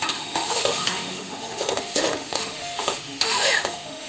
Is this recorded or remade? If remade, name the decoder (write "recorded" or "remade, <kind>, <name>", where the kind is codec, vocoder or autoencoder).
remade, autoencoder, DAC-VAE